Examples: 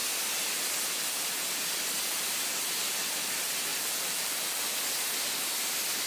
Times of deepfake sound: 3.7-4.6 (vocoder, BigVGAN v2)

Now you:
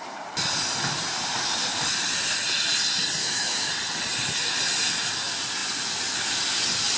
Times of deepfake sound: 3.2-3.7 (autoencoder, DAC-VAE)

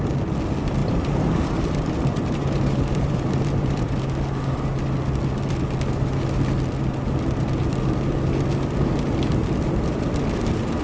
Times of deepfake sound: 0.8-4.1 (vocoder, BigVGAN v2)

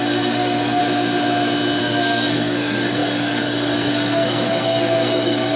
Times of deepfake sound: 0.0-0.8 (codec, SNAC); 1.8-5.6

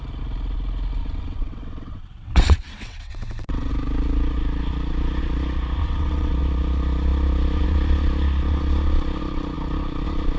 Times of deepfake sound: 1.0-3.7 (vocoder, WaveNeXt); 5.8-6.3

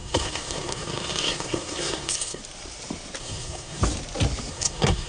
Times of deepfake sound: 0.0-2.4 (codec, SNAC); 3.2-3.8; 4.5-5.1